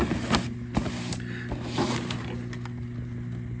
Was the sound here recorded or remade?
recorded